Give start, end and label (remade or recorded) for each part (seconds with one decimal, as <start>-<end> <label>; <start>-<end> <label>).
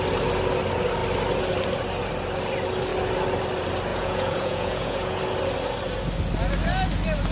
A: 0.0-3.9 recorded; 3.9-5.2 remade; 5.2-7.3 recorded